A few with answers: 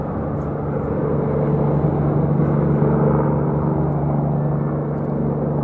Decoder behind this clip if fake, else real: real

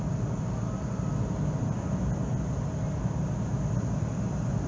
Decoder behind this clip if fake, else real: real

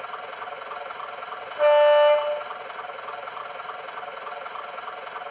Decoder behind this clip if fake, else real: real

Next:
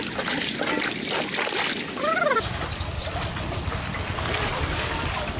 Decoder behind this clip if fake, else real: fake, vocoder, BigVGAN v2